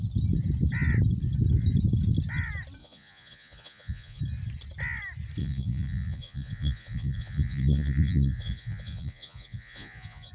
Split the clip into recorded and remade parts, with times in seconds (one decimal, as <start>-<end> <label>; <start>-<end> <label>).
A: 0.0-2.8 recorded; 2.8-4.2 remade; 4.2-5.4 recorded; 5.4-10.3 remade